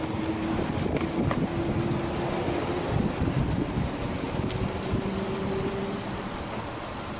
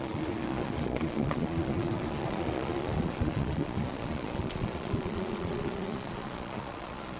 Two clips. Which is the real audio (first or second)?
first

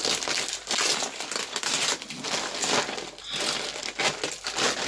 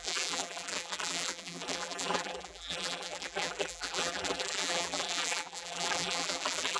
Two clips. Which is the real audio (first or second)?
first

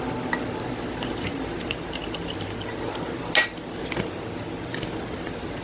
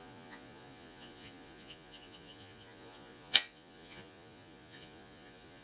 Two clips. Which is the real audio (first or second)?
first